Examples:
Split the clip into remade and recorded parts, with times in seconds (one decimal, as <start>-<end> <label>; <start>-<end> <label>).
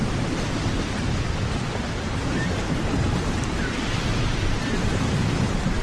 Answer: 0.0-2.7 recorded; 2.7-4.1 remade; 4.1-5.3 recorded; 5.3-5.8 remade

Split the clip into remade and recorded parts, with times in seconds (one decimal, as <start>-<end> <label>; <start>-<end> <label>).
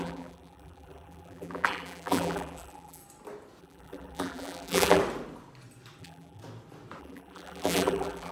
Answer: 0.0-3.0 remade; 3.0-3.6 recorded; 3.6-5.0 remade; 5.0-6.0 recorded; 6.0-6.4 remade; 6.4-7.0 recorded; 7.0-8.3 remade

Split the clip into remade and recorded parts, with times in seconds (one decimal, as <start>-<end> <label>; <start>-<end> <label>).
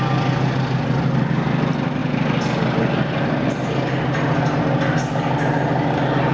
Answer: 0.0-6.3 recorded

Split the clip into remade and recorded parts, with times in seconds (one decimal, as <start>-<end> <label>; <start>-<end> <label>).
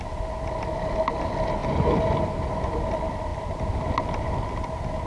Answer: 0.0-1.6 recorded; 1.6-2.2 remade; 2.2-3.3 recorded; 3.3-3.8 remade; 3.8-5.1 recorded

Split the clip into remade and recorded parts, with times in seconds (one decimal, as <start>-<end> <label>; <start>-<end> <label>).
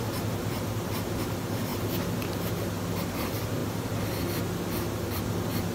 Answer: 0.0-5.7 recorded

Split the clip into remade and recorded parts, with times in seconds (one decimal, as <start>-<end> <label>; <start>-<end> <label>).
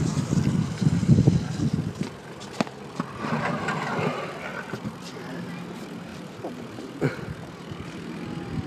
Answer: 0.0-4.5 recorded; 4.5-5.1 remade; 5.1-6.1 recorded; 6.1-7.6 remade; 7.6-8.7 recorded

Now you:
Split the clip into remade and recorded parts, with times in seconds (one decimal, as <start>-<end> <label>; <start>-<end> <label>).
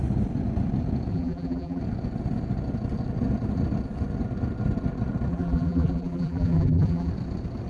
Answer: 0.0-1.1 recorded; 1.1-1.8 remade; 1.8-5.3 recorded; 5.3-7.1 remade; 7.1-7.7 recorded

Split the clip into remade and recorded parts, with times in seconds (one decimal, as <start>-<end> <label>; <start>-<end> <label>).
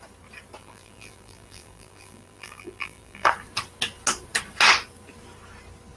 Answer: 0.0-0.6 recorded; 0.6-3.3 remade; 3.3-6.0 recorded